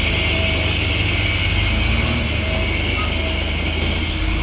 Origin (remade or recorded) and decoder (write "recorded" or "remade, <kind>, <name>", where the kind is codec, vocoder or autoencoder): recorded